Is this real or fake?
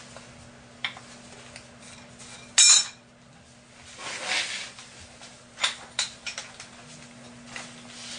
real